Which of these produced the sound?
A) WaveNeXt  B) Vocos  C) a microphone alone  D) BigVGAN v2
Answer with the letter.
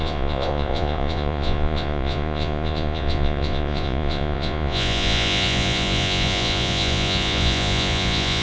B